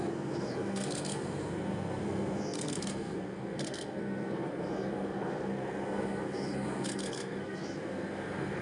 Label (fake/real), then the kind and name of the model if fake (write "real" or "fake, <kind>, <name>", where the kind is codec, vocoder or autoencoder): fake, codec, SNAC